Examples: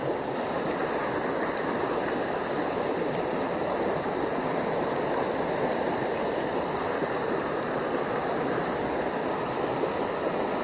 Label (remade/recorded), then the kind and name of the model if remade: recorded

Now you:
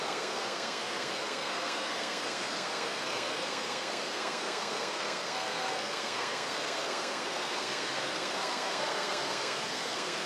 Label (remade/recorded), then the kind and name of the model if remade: remade, codec, SNAC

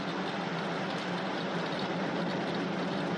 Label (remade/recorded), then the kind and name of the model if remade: recorded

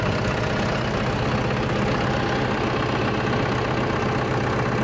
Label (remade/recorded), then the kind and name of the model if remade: recorded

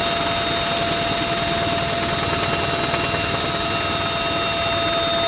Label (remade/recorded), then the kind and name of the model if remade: recorded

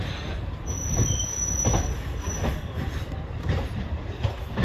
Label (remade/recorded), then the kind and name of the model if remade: recorded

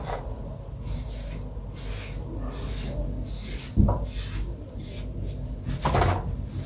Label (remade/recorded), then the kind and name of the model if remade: recorded